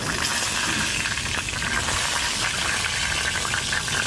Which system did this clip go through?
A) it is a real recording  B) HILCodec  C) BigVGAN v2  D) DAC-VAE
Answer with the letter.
A